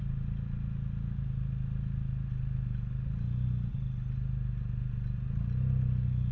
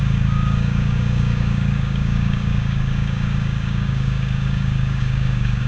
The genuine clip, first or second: first